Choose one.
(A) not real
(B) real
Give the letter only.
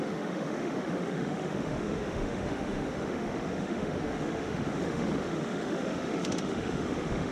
A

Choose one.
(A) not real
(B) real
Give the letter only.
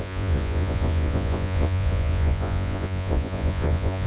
A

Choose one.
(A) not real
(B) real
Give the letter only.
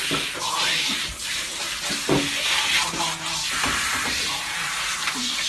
B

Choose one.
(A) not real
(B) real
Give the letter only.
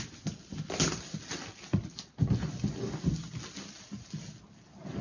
B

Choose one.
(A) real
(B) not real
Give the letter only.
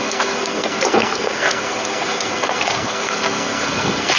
B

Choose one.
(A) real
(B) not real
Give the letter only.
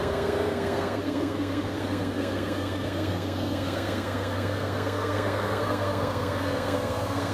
B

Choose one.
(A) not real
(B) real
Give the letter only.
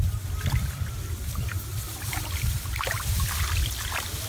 B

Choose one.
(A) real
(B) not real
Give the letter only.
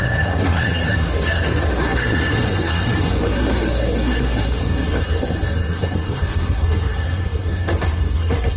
B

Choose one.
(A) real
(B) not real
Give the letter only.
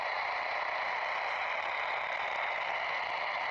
A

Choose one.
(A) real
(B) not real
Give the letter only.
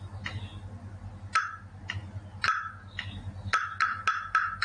A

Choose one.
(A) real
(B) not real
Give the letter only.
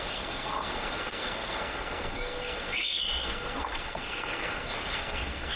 B